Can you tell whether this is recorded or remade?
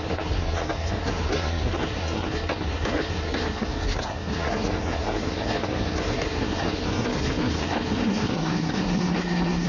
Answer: remade